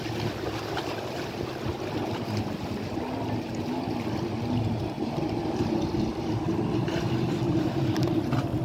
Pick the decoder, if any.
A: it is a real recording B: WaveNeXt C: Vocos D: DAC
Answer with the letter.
A